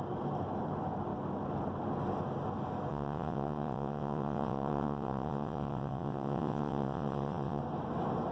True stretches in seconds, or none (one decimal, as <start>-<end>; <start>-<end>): 0.0-2.9; 7.6-8.3

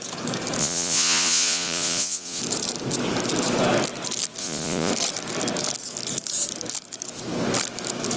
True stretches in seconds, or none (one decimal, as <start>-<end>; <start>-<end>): 0.0-0.6; 2.4-4.4; 4.9-8.2

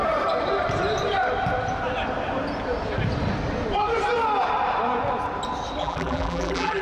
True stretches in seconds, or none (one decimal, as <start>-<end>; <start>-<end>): 0.0-5.8

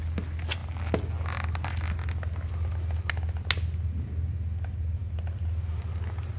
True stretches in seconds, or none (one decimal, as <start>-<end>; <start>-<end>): 0.0-5.0; 5.8-6.4

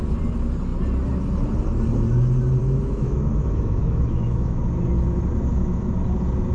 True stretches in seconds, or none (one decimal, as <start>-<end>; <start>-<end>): 0.0-2.6; 4.6-5.5; 6.0-6.5

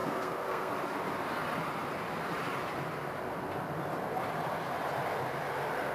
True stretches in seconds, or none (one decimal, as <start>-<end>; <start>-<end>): 0.7-5.9

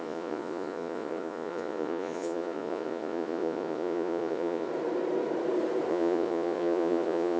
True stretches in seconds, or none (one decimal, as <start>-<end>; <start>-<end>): 4.7-5.9

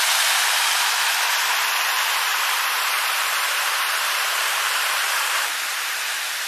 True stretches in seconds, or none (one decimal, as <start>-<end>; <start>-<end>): 0.0-2.3